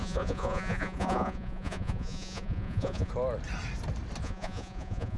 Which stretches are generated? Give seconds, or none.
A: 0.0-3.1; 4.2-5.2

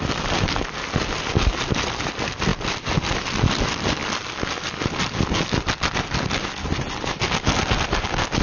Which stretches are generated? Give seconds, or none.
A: 2.5-3.0

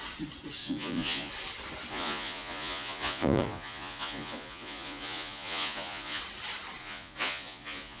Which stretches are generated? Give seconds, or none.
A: 0.6-1.3; 1.9-6.2; 6.8-8.0